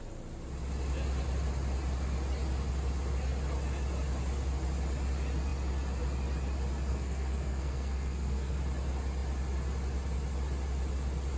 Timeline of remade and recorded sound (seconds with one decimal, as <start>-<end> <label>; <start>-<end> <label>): 0.0-6.9 recorded; 6.9-8.6 remade; 8.6-11.4 recorded